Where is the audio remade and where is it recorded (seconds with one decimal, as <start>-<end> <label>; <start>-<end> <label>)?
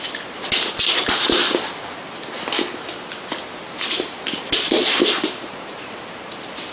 0.0-1.8 remade; 1.8-3.6 recorded; 3.6-6.7 remade